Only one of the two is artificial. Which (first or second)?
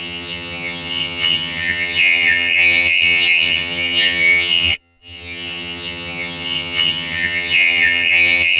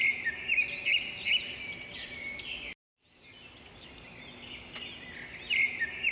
first